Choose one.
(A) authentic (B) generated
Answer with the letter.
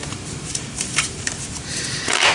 B